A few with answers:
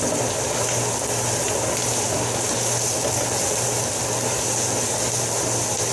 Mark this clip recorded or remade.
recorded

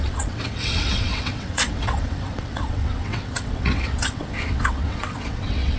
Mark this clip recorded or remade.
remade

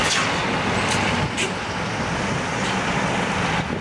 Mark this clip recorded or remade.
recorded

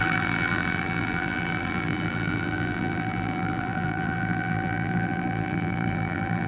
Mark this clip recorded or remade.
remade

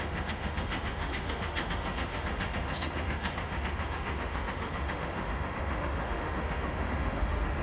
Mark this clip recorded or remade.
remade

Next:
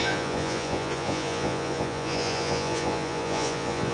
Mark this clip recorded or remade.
remade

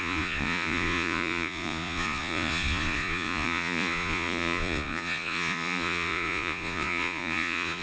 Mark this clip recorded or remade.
remade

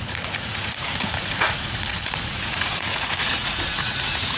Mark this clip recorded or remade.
remade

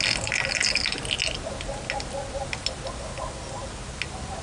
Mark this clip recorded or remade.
recorded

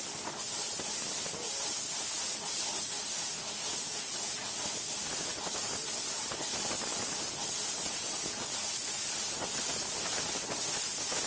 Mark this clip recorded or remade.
recorded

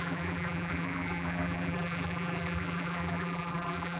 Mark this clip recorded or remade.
remade